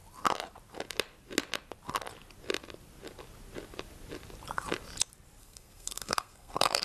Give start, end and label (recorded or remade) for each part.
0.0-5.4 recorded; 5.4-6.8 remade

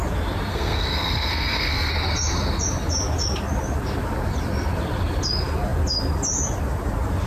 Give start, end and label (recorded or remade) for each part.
0.0-0.5 recorded; 0.5-1.9 remade; 1.9-7.3 recorded

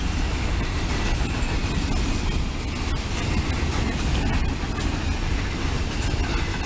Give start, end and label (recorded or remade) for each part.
0.0-6.7 recorded

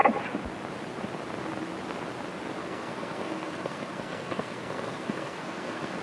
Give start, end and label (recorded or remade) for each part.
0.0-2.6 recorded; 2.6-6.0 remade

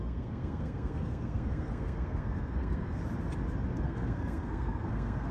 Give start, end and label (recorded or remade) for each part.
0.0-3.0 remade; 3.0-3.8 recorded; 3.8-5.3 remade

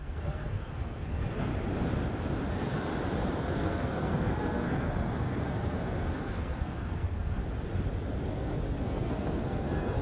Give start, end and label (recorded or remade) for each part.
0.0-1.5 remade; 1.5-2.5 recorded; 2.5-2.9 remade; 2.9-3.4 recorded; 3.4-7.4 remade; 7.4-8.3 recorded; 8.3-10.0 remade

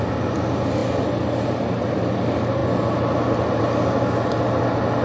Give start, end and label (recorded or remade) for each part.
0.0-5.0 recorded